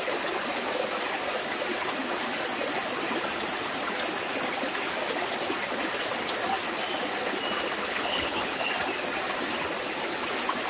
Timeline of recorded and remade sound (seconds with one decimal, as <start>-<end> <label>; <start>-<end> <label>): 0.0-7.8 recorded; 7.8-8.7 remade; 8.7-10.7 recorded